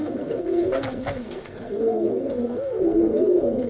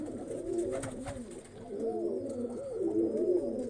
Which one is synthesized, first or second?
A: first